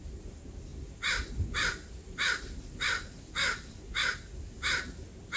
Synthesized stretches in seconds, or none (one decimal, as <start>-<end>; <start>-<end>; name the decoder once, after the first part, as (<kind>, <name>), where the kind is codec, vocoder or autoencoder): 0.7-3.8 (vocoder, BigVGAN v2)